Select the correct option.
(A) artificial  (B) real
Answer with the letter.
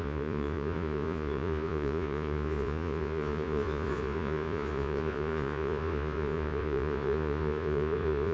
A